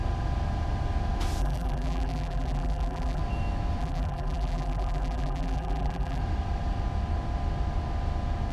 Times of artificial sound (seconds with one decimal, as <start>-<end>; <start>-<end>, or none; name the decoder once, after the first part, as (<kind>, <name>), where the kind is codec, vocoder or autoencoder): 1.4-3.2 (vocoder, BigVGAN v2); 3.8-6.2